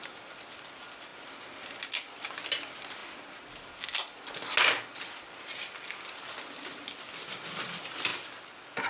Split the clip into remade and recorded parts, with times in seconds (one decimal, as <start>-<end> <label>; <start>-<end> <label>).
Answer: 0.0-8.9 recorded